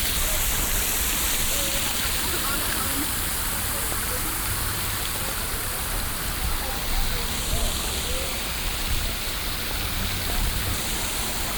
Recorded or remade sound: recorded